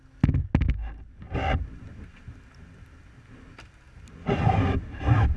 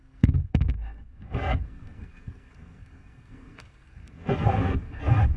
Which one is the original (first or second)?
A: first